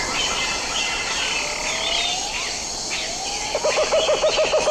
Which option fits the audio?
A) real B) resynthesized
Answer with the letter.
A